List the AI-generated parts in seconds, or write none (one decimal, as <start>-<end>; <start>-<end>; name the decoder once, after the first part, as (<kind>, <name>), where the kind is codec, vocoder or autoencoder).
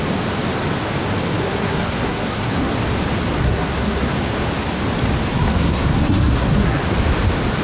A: 1.4-2.7 (codec, SNAC); 3.4-4.1; 5.3-6.8